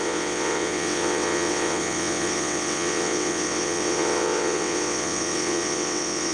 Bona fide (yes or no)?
no